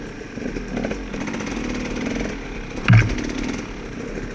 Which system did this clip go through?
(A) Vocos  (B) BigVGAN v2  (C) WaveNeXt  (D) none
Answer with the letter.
D